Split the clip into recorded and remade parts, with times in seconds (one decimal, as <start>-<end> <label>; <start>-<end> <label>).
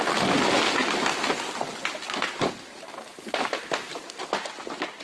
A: 0.0-5.0 recorded